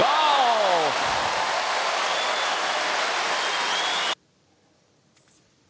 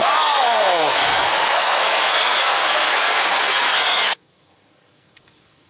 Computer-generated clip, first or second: second